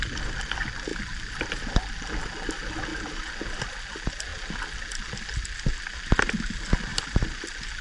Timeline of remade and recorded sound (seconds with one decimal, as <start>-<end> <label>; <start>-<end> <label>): 0.0-7.8 recorded